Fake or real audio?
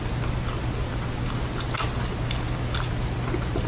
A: real